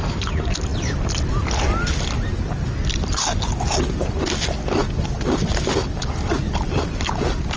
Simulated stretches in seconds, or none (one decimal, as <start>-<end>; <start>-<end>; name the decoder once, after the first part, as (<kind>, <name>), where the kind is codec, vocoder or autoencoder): none